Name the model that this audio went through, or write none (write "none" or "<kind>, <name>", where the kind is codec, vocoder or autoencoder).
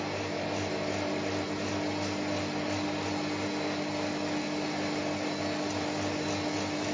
none